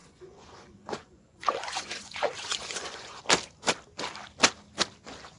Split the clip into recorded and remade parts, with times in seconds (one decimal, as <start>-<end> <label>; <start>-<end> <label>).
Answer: 0.0-3.2 remade; 3.2-5.4 recorded